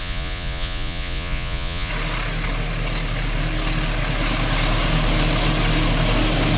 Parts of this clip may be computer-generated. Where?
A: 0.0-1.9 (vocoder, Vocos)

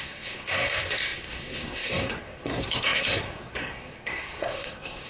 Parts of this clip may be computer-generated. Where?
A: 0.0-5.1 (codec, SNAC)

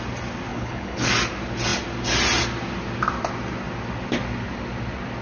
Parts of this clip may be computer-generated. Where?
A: 0.5-1.1 (codec, HILCodec)